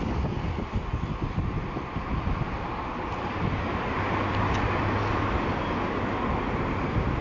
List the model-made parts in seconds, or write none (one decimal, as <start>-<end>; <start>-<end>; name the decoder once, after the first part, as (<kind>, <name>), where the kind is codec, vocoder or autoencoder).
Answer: 2.5-4.3 (vocoder, BigVGAN v2)